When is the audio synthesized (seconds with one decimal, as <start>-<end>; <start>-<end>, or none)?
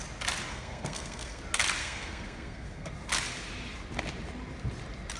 0.5-1.4; 1.8-2.9